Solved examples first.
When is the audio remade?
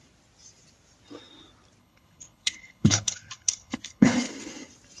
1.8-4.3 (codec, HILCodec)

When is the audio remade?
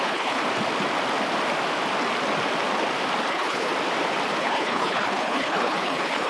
0.0-0.4 (codec, HILCodec); 3.3-3.7; 4.4-6.3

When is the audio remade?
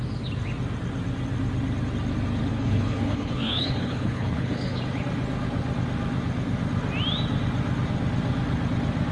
2.5-4.8 (codec, HILCodec)